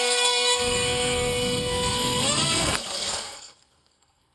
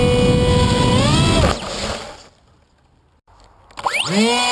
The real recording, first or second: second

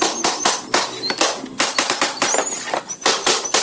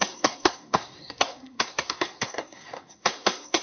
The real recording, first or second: first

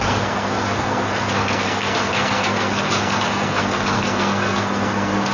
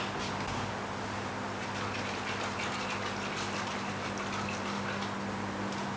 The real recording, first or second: second